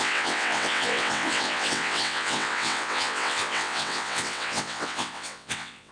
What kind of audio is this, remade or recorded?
remade